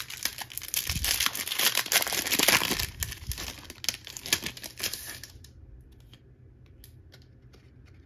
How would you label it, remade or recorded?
recorded